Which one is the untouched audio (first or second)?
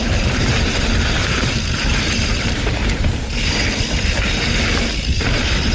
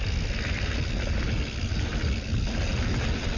second